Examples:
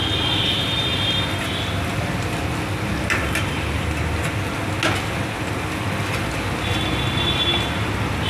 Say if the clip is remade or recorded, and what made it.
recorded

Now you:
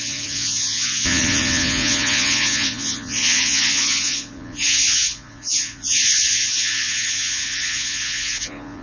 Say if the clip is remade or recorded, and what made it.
remade, vocoder, Vocos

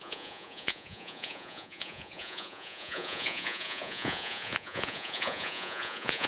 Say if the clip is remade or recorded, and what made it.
remade, vocoder, Vocos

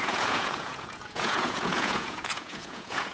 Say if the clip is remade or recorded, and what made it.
remade, vocoder, Vocos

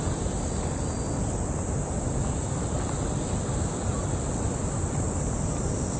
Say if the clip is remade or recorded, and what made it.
recorded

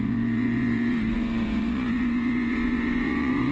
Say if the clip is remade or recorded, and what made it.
remade, vocoder, Vocos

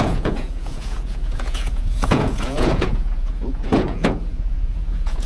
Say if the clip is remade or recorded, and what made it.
remade, vocoder, Vocos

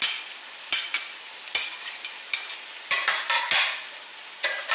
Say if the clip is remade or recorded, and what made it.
recorded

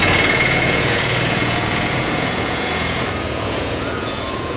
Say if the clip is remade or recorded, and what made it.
remade, vocoder, Vocos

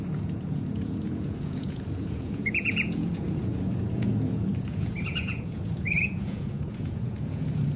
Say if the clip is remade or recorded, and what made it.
remade, vocoder, Vocos